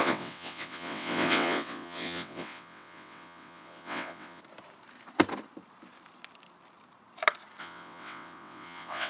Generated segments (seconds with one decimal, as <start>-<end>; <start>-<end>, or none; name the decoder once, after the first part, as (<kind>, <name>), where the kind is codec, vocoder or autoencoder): 0.0-4.4 (vocoder, WaveNeXt); 7.6-9.1